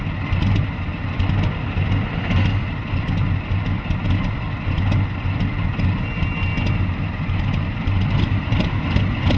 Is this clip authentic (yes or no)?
yes